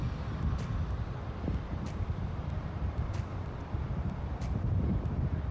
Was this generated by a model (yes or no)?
yes